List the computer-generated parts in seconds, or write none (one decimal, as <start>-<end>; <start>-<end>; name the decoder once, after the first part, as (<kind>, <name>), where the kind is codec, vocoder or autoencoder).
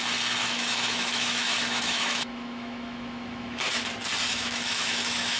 0.4-3.6 (autoencoder, DAC-VAE); 4.3-5.4